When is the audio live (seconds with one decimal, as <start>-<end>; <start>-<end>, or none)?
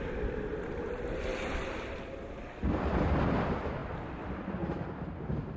0.0-1.3; 2.0-3.8; 5.1-5.6